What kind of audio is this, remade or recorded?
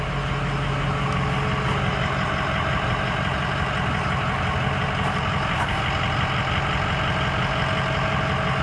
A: recorded